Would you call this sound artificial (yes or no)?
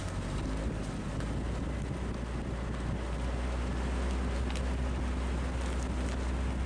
no